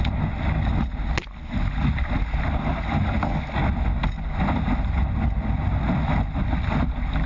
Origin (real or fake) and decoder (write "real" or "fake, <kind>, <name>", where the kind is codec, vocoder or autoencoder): real